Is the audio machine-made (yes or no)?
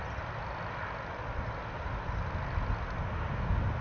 no